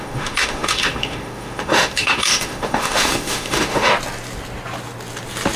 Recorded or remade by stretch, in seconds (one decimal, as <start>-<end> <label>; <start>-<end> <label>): 0.0-3.9 remade; 3.9-5.6 recorded